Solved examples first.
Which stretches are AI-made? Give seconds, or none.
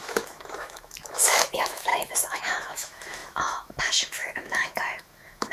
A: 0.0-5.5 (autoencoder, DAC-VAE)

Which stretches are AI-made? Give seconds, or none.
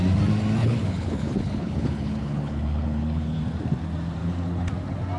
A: 0.6-3.4 (codec, HILCodec); 4.2-4.7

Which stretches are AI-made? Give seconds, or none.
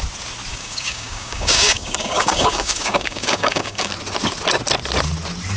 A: 0.5-3.9 (codec, DAC)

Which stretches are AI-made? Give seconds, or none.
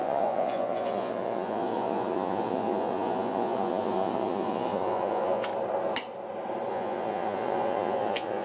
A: 0.0-5.5 (vocoder, Vocos); 6.7-8.4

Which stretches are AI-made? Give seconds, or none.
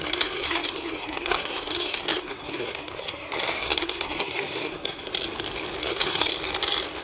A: 0.0-5.1 (codec, SNAC); 5.8-6.3